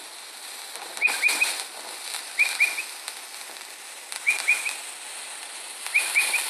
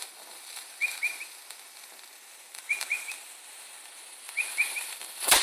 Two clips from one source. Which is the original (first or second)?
first